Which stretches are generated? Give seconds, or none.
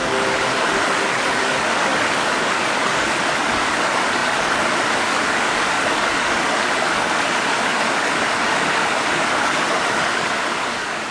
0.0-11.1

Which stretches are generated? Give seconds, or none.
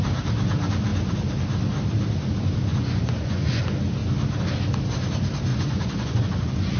2.7-3.6; 5.5-6.8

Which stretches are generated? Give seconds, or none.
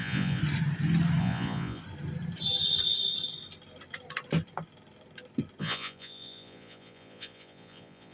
0.0-0.4; 1.2-1.8; 5.6-8.1